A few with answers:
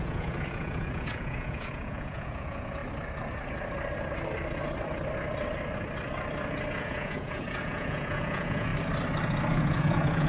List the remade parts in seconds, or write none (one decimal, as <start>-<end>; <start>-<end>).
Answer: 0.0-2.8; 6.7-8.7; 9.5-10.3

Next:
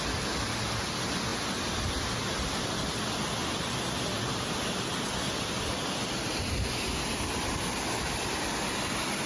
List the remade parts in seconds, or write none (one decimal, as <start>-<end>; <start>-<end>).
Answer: none

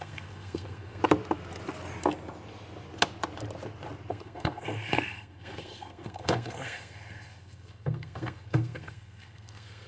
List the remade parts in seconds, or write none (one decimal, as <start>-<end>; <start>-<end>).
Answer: 0.0-1.0; 4.1-9.9

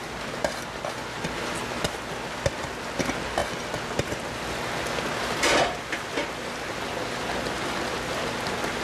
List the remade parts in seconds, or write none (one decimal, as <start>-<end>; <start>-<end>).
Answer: none